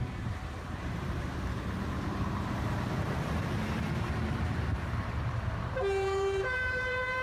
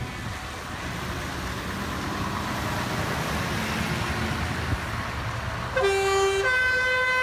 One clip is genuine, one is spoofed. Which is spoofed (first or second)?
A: first